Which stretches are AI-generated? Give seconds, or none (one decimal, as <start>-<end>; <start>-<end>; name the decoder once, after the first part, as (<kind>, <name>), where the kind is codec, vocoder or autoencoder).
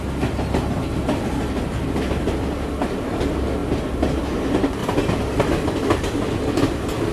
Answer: 3.6-4.2 (vocoder, BigVGAN v2); 4.8-5.9